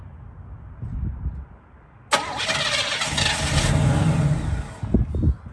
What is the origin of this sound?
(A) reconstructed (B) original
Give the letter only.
B